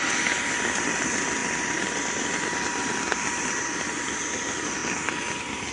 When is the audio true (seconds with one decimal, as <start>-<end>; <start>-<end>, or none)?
0.0-5.7